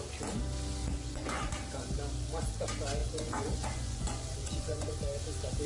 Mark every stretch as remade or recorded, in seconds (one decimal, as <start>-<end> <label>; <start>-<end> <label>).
0.0-0.8 recorded; 0.8-1.5 remade; 1.5-3.0 recorded; 3.0-4.9 remade; 4.9-5.7 recorded